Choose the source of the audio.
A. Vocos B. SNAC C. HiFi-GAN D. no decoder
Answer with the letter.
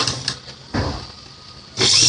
D